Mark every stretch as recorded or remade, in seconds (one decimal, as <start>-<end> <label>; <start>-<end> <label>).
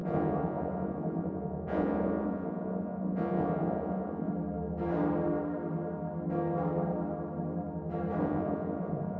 0.0-4.3 remade; 4.3-8.2 recorded; 8.2-9.2 remade